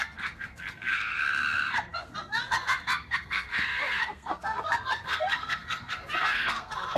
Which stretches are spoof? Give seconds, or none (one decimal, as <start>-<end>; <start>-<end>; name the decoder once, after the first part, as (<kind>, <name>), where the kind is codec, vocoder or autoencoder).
0.0-7.0 (codec, SNAC)